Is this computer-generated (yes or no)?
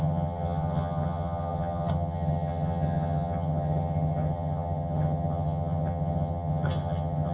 yes